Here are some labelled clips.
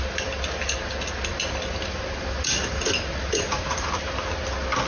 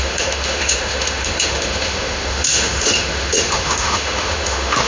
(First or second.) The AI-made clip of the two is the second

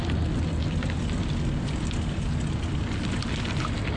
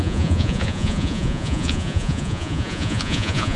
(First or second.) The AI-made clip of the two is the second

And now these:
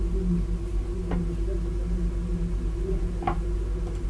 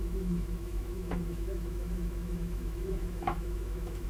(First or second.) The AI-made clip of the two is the second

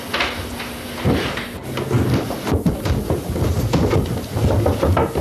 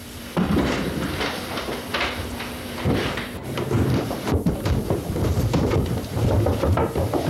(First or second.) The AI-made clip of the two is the second